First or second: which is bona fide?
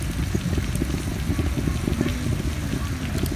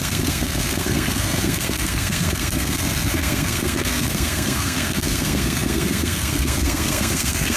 first